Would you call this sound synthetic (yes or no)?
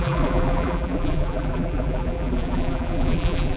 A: yes